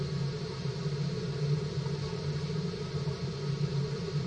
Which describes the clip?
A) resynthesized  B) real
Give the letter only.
A